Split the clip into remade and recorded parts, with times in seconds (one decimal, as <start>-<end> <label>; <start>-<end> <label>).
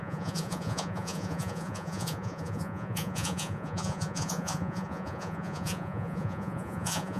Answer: 0.0-7.2 remade